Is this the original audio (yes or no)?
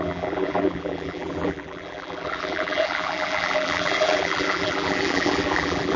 no